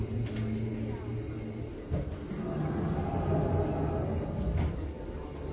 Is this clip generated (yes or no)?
no